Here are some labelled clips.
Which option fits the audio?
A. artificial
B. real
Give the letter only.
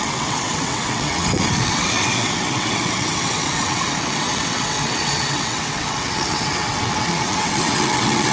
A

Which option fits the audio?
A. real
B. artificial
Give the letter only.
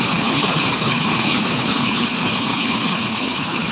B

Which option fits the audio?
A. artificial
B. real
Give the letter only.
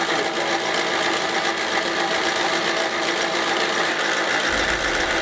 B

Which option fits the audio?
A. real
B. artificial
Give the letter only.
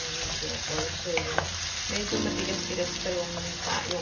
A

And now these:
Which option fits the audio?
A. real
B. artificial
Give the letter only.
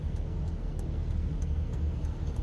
B